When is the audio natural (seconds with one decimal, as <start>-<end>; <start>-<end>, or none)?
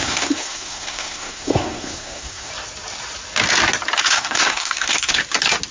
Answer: 2.5-4.0; 5.2-5.7